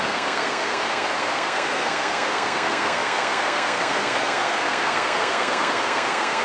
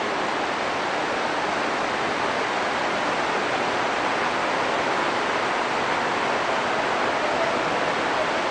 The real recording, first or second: second